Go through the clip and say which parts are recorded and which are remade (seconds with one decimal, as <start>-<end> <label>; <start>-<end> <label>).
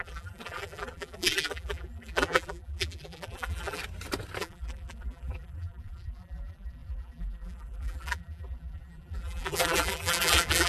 0.0-3.8 remade; 3.8-4.4 recorded; 4.4-10.7 remade